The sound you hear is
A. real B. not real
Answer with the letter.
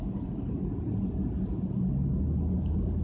A